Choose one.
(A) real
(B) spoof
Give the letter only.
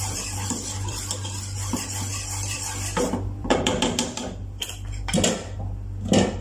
B